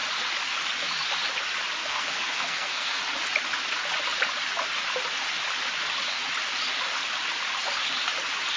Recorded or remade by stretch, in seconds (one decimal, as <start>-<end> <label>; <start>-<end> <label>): 0.0-1.8 recorded; 1.8-3.0 remade; 3.0-8.6 recorded